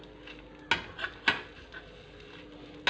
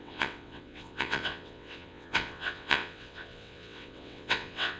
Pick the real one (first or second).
first